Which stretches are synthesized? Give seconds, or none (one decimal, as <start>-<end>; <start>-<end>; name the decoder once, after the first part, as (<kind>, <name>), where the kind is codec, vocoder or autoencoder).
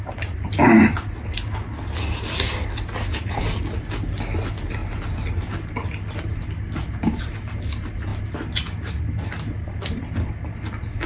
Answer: none